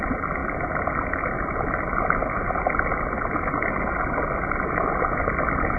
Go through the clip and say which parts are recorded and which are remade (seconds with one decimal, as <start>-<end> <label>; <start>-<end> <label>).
0.0-5.8 recorded